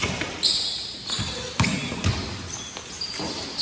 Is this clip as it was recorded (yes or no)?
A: yes